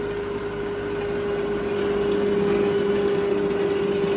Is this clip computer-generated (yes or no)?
no